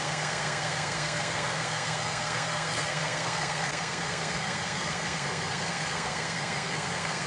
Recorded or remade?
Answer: remade